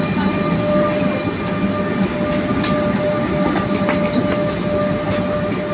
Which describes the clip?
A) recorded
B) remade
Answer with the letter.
A